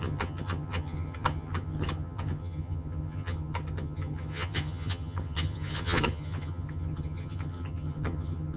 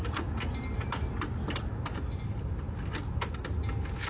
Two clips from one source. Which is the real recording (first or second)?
second